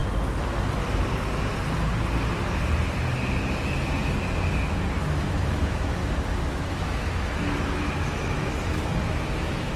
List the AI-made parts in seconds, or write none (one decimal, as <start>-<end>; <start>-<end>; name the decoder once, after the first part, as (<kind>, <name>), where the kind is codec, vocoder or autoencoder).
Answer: 5.0-6.0 (autoencoder, DAC-VAE); 6.5-9.8